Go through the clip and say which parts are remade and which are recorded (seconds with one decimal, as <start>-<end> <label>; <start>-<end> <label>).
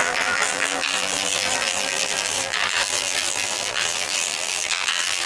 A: 0.0-5.3 remade